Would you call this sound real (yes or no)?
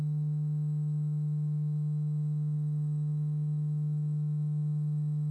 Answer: no